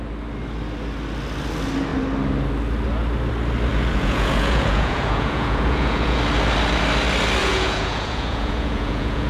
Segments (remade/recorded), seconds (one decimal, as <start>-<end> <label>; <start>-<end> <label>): 0.0-3.7 recorded; 3.7-6.2 remade; 6.2-7.4 recorded; 7.4-9.3 remade